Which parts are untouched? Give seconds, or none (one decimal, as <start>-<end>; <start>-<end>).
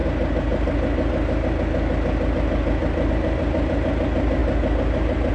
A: 0.0-5.3